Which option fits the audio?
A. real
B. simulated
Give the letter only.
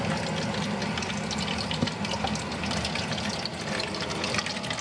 A